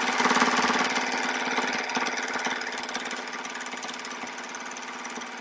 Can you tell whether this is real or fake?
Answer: real